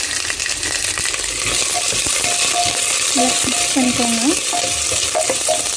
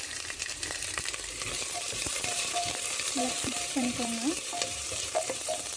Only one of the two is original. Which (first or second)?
first